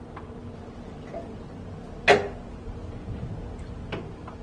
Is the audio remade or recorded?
recorded